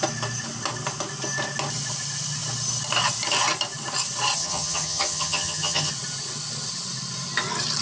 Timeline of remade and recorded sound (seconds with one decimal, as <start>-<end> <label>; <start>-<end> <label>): 0.0-4.4 recorded; 4.4-5.9 remade; 5.9-7.8 recorded